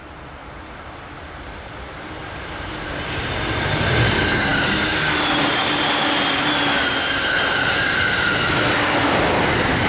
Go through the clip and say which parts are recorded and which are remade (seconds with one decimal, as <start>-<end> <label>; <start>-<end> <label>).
0.0-9.9 recorded